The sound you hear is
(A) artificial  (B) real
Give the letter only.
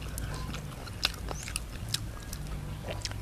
B